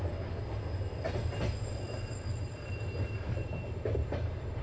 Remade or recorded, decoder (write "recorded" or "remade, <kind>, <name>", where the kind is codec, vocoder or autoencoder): recorded